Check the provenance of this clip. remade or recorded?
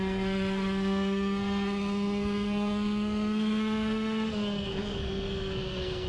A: remade